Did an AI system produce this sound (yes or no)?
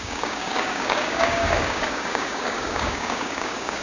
yes